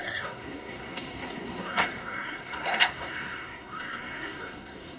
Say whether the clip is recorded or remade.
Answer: remade